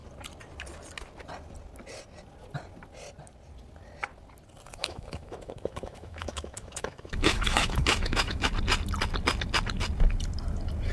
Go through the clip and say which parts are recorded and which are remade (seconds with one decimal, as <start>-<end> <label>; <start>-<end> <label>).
0.0-4.8 recorded; 4.8-8.5 remade; 8.5-10.9 recorded